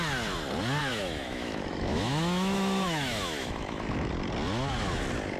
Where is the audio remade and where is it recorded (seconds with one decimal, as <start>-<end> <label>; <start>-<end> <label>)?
0.0-0.9 recorded; 0.9-4.1 remade; 4.1-5.4 recorded